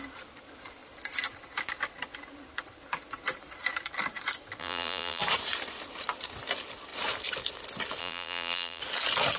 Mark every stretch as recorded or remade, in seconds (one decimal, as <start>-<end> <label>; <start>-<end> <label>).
0.0-4.6 recorded; 4.6-5.2 remade; 5.2-8.0 recorded; 8.0-8.8 remade; 8.8-9.4 recorded